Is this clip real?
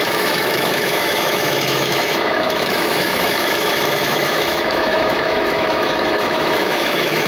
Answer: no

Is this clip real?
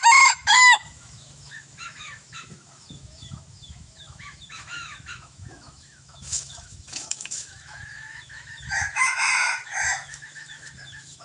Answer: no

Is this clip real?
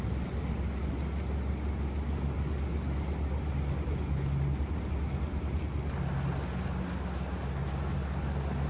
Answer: yes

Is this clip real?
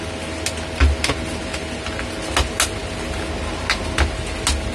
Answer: yes